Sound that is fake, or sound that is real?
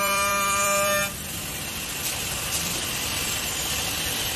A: fake